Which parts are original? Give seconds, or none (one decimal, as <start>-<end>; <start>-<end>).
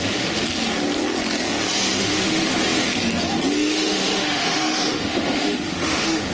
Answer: 0.4-2.0; 2.5-3.5